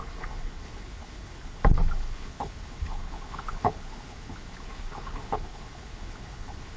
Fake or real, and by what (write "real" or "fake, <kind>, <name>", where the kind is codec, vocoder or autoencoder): fake, codec, HILCodec